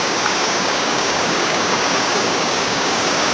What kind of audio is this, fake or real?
fake